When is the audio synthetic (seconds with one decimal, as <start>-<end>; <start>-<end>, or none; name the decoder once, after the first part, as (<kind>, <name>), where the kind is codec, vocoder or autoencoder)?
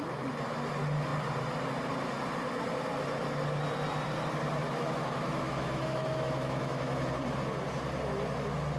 4.6-7.1 (autoencoder, DAC-VAE)